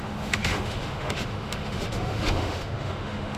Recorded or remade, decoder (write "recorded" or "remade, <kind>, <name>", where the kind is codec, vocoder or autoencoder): remade, autoencoder, DAC-VAE